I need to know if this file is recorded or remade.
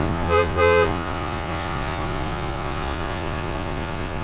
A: remade